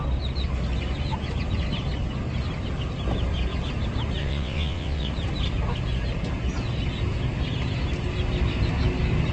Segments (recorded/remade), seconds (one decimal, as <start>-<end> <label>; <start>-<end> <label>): 0.0-4.2 recorded; 4.2-5.1 remade; 5.1-9.3 recorded